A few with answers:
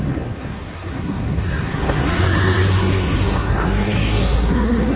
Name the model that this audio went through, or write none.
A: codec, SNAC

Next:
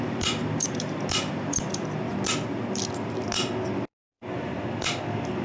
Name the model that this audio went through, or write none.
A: none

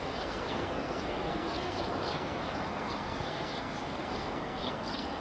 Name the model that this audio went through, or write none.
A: codec, SNAC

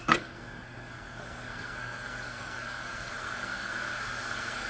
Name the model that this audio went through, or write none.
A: codec, SNAC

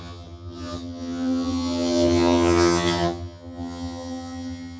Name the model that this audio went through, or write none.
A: vocoder, HiFi-GAN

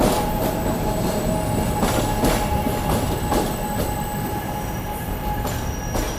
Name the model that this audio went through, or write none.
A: none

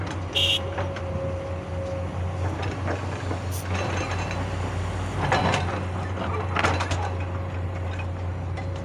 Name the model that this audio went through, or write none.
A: none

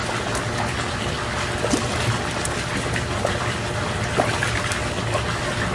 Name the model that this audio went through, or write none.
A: none